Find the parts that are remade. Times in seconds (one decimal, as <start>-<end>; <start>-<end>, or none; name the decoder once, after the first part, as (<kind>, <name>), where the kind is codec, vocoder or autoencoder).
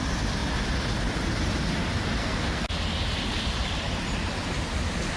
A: 2.2-2.7 (codec, SNAC)